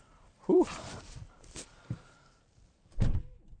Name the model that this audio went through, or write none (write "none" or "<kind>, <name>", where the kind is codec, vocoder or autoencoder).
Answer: vocoder, BigVGAN v2